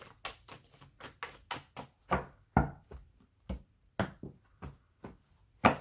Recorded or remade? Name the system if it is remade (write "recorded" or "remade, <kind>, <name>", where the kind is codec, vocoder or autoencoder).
recorded